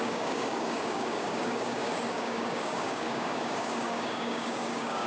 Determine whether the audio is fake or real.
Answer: fake